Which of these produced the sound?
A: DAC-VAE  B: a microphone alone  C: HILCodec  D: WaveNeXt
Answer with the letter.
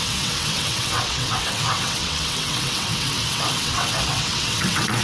D